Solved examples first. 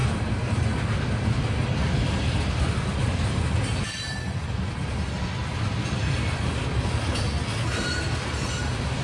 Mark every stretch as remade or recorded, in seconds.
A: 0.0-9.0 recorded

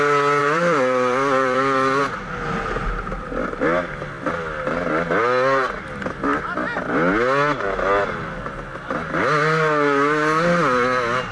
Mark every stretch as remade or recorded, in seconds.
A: 0.0-0.4 recorded; 0.4-2.0 remade; 2.0-11.3 recorded